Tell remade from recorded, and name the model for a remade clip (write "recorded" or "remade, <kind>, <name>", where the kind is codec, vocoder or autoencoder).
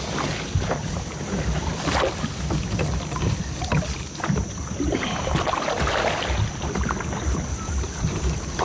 recorded